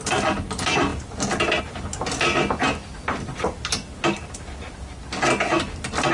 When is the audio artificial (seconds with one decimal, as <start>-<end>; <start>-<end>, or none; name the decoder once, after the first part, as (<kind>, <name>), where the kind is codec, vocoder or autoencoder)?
none